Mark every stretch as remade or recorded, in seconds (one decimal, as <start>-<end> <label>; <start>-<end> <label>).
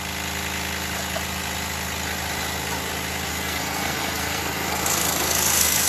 0.0-3.3 recorded; 3.3-5.9 remade